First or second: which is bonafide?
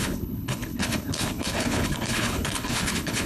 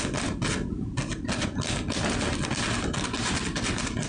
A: second